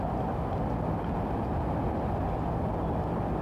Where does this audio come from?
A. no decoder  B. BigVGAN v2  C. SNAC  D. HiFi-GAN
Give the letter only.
A